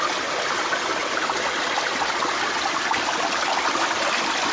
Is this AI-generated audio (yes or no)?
no